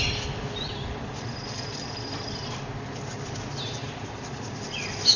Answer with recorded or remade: recorded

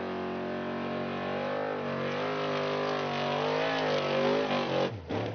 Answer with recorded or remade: recorded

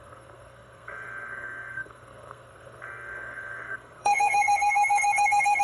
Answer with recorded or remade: remade